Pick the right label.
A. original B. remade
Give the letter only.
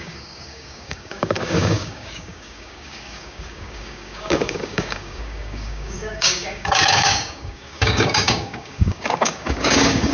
B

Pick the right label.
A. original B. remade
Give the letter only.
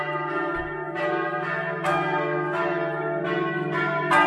A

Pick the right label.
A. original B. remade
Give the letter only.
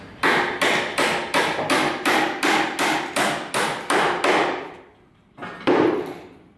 A